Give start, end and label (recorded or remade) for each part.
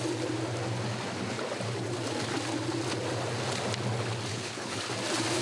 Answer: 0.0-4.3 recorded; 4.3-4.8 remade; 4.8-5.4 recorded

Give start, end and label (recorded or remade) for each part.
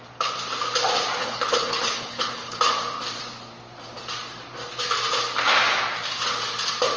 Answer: 0.0-1.2 recorded; 1.2-2.6 remade; 2.6-7.0 recorded